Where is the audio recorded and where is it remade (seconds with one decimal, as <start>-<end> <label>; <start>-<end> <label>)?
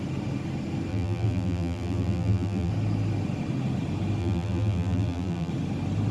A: 0.0-0.9 recorded; 0.9-2.7 remade; 2.7-4.2 recorded; 4.2-5.5 remade; 5.5-6.1 recorded